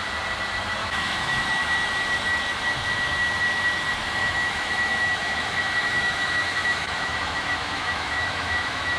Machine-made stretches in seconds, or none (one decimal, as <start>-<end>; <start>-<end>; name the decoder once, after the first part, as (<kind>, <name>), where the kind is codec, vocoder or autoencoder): 0.8-1.5 (autoencoder, DAC-VAE); 4.2-9.0